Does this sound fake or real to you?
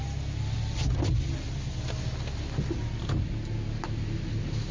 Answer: real